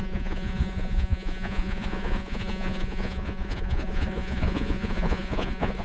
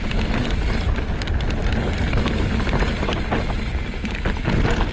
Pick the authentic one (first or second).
second